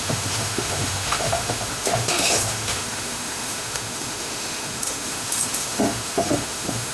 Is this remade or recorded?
remade